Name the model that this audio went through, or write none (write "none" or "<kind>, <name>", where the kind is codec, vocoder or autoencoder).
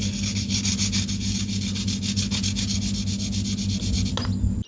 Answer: none